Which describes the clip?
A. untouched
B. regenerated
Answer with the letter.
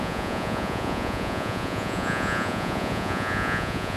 B